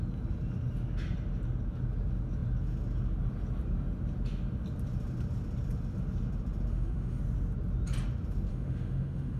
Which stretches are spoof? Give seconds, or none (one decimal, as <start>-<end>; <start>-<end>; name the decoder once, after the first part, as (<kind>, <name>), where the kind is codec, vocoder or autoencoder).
6.7-7.2 (autoencoder, DAC-VAE); 8.5-9.4